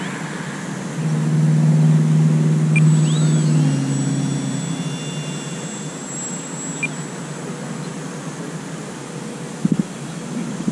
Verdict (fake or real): real